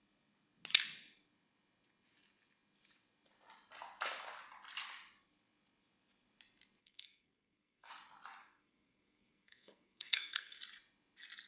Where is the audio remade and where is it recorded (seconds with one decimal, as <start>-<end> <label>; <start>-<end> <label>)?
0.0-6.8 recorded; 6.8-7.9 remade; 7.9-8.4 recorded; 8.4-10.6 remade; 10.6-11.5 recorded